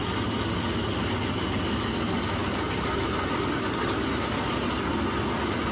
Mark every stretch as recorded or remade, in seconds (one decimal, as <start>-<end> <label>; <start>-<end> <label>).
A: 0.0-5.7 recorded